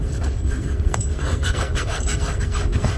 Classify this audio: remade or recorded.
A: remade